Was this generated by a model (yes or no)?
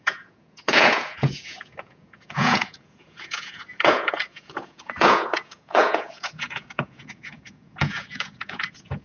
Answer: yes